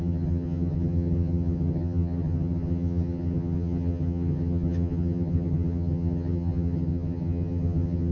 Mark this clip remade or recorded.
remade